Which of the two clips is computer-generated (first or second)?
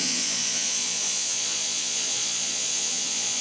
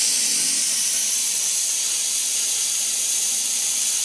first